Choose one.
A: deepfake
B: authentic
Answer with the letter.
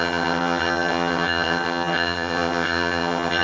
A